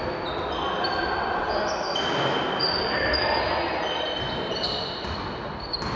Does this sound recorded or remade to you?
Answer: recorded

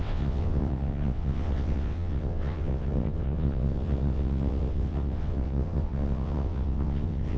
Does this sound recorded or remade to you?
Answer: remade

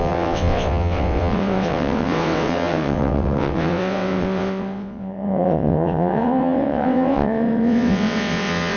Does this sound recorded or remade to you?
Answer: remade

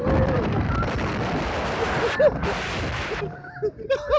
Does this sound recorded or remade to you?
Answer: recorded